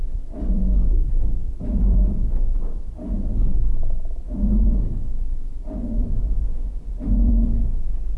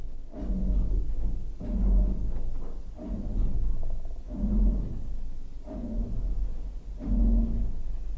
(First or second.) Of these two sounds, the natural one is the second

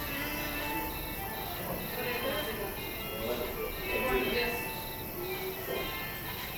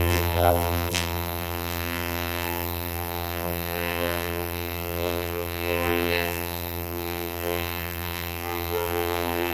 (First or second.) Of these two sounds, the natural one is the first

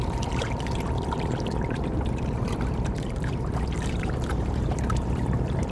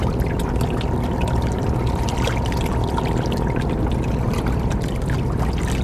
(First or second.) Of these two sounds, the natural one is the second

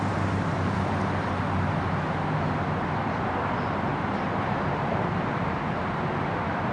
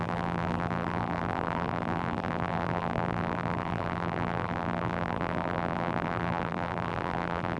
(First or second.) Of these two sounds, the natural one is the first